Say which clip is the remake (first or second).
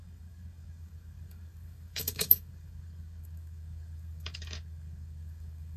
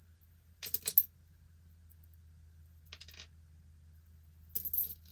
first